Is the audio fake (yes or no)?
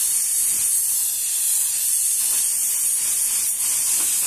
no